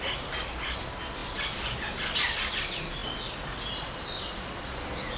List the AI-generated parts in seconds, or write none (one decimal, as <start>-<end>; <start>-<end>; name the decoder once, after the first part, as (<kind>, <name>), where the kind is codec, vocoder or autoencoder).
none